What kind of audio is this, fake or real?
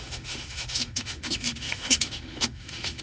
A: fake